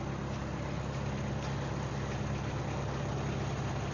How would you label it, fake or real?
real